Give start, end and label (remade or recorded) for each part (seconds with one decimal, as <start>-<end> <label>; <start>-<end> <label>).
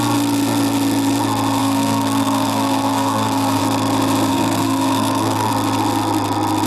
0.0-1.6 recorded; 1.6-3.6 remade; 3.6-4.3 recorded; 4.3-5.5 remade; 5.5-6.7 recorded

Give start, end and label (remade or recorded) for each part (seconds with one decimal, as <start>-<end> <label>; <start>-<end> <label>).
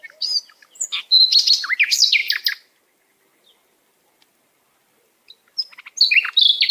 0.0-6.7 recorded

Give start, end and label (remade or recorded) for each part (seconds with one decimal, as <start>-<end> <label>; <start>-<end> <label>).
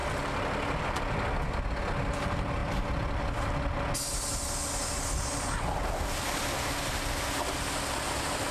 0.0-8.5 recorded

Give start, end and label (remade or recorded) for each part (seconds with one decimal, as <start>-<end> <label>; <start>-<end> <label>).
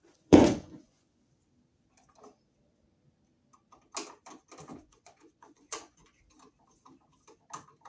0.0-1.2 remade; 1.2-4.7 recorded; 4.7-6.2 remade; 6.2-7.9 recorded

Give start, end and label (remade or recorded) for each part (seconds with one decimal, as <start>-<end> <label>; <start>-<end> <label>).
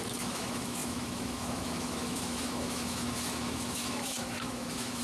0.0-5.0 remade